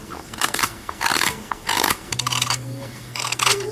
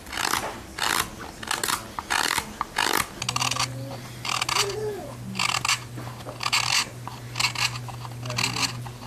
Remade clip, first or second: first